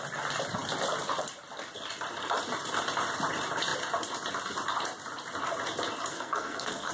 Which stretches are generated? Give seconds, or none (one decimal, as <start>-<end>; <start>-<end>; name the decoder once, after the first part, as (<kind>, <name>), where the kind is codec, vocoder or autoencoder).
6.1-6.9 (codec, SNAC)